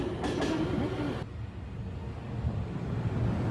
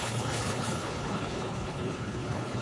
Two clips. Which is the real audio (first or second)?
first